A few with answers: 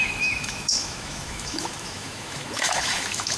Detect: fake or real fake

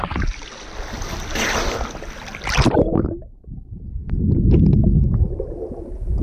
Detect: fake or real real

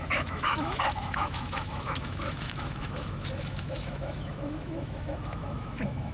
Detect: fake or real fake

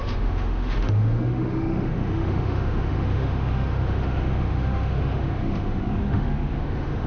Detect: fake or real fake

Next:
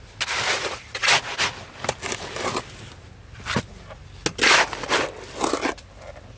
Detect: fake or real real